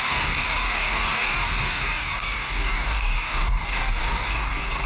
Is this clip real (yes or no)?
no